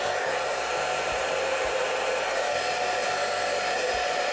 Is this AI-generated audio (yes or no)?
no